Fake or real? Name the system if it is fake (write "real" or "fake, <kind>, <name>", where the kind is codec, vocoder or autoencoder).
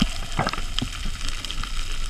real